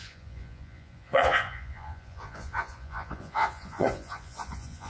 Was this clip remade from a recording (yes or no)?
yes